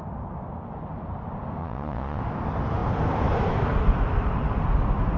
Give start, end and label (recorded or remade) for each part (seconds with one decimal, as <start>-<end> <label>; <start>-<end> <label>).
0.0-1.6 recorded; 1.6-2.2 remade; 2.2-5.2 recorded